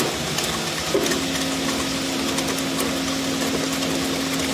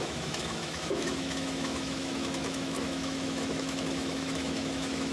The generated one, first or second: second